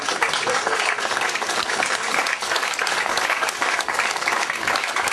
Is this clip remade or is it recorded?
remade